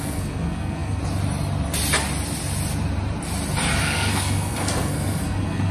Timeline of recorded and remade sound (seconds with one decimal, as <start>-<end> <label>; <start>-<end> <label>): 0.0-1.0 remade; 1.0-3.8 recorded; 3.8-5.7 remade